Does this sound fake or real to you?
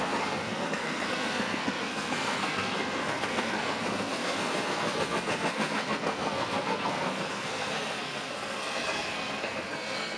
fake